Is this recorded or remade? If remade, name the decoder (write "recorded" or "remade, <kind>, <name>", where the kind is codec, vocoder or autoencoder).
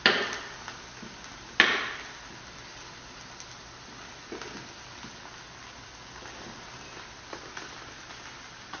recorded